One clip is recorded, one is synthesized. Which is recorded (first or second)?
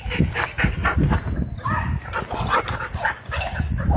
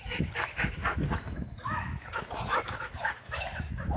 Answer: first